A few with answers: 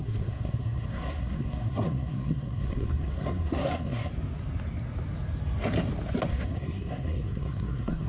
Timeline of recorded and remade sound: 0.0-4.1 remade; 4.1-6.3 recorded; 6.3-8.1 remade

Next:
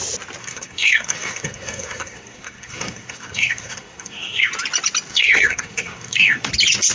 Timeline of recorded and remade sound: 0.0-0.4 recorded; 0.4-4.5 remade; 4.5-5.1 recorded; 5.1-6.5 remade; 6.5-6.9 recorded

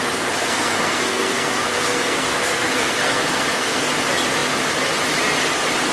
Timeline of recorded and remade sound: 0.0-0.4 recorded; 0.4-3.9 remade; 3.9-5.9 recorded

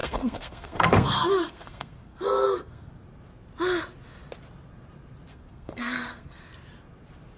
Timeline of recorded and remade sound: 0.0-2.9 remade; 2.9-5.3 recorded; 5.3-6.4 remade; 6.4-7.4 recorded

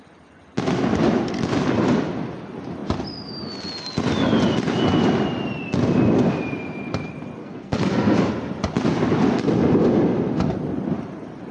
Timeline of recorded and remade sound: 0.0-7.4 recorded; 7.4-8.3 remade; 8.3-11.5 recorded

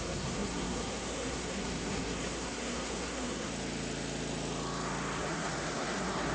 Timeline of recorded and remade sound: 0.0-3.5 remade; 3.5-5.2 recorded; 5.2-6.3 remade